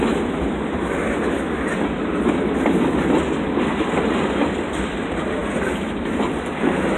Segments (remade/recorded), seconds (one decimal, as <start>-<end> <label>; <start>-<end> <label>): 0.0-5.4 recorded; 5.4-6.5 remade; 6.5-7.0 recorded